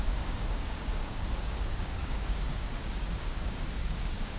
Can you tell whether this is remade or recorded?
remade